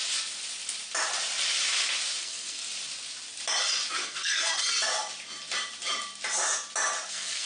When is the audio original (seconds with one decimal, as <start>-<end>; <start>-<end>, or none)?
0.0-2.2; 2.6-3.9; 4.6-7.1